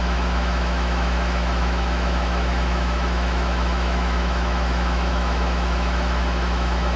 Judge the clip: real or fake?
fake